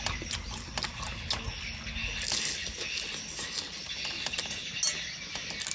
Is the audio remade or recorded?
recorded